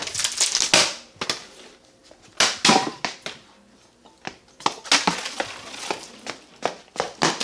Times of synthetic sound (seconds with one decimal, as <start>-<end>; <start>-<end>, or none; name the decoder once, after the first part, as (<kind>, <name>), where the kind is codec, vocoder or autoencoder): none